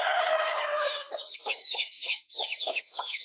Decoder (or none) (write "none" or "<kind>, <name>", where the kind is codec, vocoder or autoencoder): autoencoder, DAC-VAE